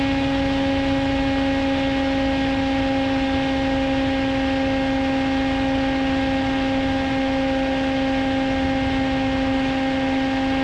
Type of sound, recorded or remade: recorded